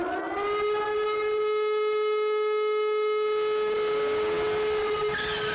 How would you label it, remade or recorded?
recorded